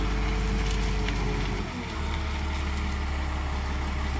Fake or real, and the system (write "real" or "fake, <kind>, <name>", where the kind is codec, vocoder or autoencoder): real